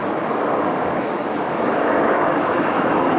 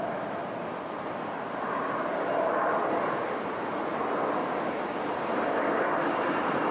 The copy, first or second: first